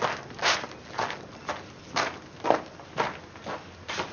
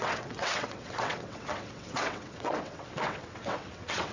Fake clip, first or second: second